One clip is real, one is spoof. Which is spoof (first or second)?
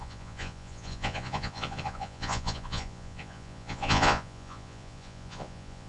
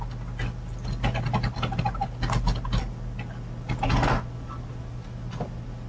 first